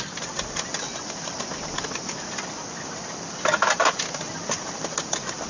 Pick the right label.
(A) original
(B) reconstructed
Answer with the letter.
A